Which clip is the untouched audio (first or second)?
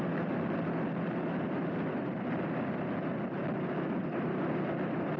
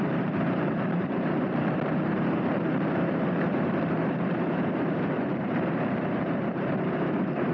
first